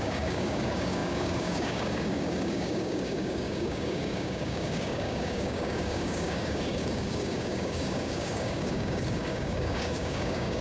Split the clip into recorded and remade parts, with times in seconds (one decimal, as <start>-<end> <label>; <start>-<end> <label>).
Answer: 0.0-10.6 remade